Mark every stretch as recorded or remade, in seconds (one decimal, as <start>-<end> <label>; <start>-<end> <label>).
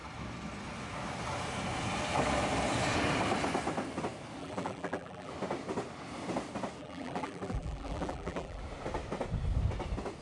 0.0-4.4 recorded; 4.4-5.3 remade; 5.3-6.8 recorded; 6.8-8.6 remade; 8.6-10.2 recorded